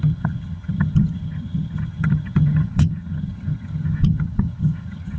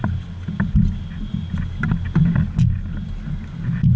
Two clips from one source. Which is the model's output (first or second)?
first